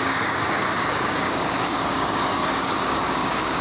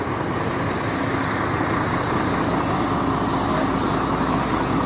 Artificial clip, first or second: first